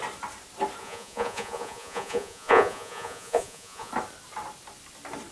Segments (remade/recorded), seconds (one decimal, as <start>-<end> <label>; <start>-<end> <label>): 0.0-0.8 recorded; 0.8-3.9 remade; 3.9-5.3 recorded